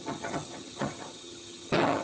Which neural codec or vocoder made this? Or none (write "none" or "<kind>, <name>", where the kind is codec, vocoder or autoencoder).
vocoder, HiFi-GAN